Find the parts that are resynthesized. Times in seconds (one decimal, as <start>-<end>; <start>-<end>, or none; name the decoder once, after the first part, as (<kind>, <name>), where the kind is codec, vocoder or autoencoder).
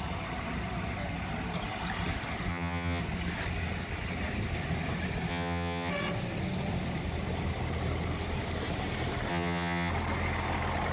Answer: 2.5-3.0 (vocoder, HiFi-GAN); 5.3-5.9; 9.3-9.9